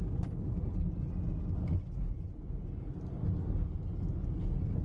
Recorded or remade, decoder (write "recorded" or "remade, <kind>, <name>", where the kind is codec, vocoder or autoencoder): recorded